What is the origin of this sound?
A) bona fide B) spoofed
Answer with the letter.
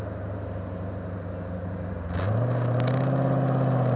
A